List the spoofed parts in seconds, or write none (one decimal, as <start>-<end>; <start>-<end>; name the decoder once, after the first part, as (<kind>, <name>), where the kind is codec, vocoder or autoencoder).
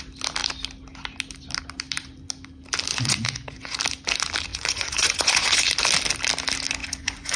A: 2.9-3.8 (vocoder, Vocos); 4.5-5.7; 6.8-7.4